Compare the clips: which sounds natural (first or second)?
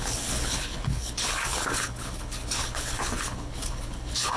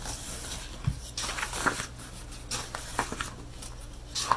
second